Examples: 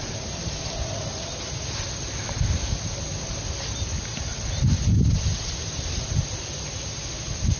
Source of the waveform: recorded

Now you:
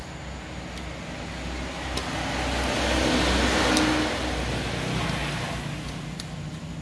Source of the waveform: recorded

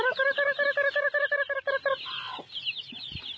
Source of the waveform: recorded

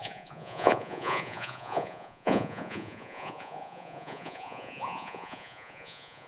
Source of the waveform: remade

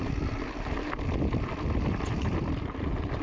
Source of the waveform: recorded